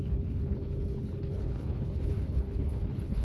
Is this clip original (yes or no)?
no